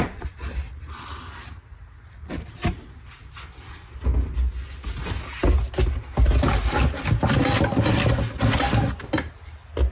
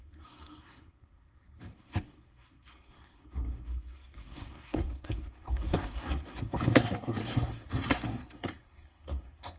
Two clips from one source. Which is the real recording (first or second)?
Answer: first